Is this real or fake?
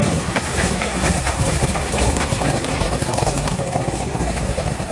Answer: fake